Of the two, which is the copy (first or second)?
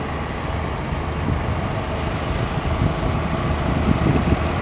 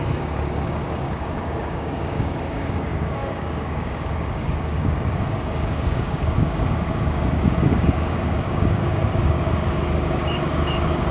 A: second